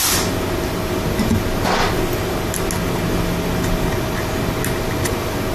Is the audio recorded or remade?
recorded